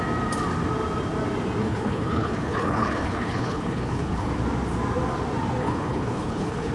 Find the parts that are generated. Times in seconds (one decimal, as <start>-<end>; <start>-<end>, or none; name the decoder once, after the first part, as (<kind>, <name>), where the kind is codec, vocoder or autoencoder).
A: 1.6-4.3 (codec, HILCodec); 5.6-6.7